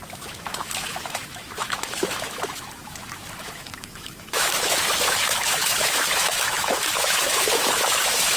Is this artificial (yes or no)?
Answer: yes